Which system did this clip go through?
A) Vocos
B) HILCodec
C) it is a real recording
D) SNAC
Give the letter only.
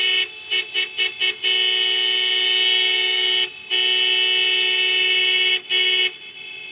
C